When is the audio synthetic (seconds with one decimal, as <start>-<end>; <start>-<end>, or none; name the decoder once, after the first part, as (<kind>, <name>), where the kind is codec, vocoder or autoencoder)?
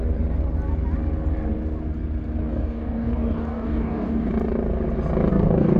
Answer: 2.4-4.3 (codec, DAC); 5.3-5.8